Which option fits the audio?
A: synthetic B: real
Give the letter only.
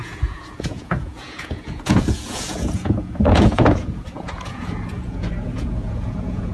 A